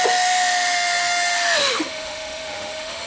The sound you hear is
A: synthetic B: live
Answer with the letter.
A